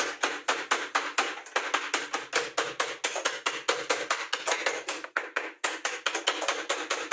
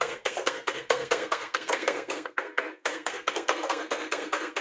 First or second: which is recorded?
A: first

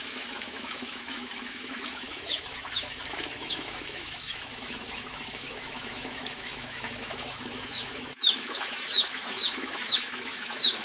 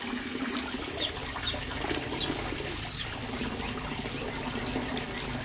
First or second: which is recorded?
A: second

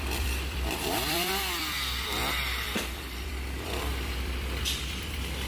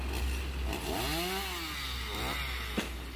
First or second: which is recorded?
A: second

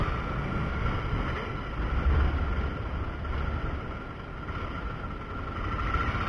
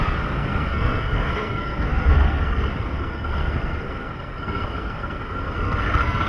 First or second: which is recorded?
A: first